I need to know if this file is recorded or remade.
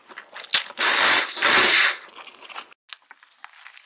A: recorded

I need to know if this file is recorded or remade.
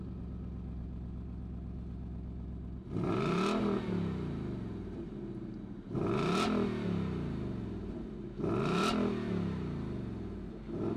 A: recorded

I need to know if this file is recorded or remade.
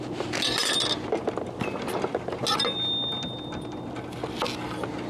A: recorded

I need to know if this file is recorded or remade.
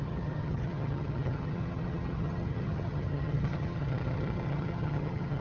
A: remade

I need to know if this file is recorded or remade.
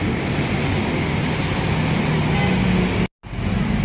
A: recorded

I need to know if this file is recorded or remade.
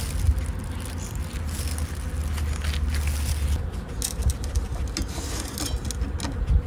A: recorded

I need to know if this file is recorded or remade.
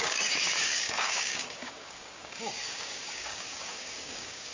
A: remade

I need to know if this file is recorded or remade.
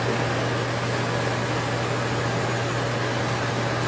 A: recorded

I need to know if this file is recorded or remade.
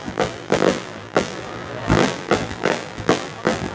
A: remade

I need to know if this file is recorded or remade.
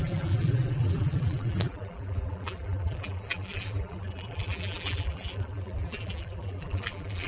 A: remade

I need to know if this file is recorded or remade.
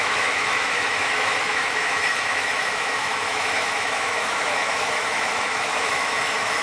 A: remade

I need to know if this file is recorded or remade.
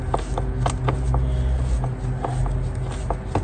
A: recorded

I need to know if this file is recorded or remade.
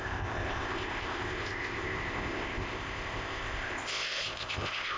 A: remade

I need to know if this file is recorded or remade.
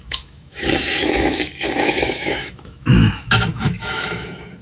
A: remade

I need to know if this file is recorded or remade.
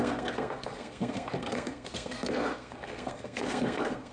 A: remade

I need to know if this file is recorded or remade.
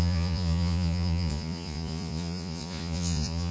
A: remade